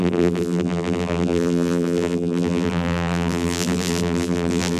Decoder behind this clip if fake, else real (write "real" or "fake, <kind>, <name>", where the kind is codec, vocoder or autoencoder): fake, vocoder, BigVGAN v2